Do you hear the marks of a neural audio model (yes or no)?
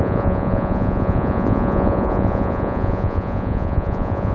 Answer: yes